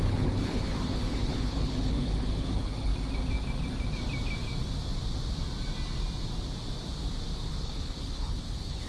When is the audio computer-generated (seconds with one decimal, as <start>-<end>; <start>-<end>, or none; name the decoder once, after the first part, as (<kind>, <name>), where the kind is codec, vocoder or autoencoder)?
0.0-2.9 (codec, HILCodec); 7.5-8.9